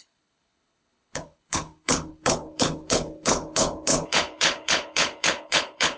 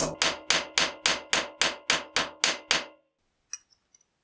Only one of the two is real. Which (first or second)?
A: second